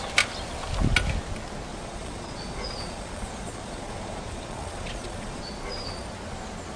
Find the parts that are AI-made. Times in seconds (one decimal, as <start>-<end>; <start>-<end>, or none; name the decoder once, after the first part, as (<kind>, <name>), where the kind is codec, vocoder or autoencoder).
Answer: 1.7-5.4 (vocoder, Vocos)